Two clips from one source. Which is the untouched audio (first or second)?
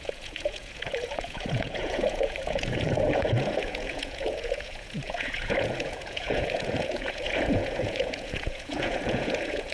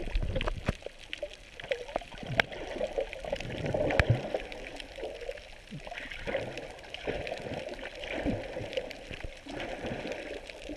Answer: second